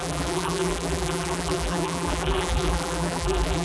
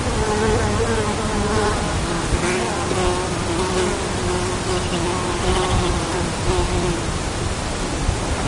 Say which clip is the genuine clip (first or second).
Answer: second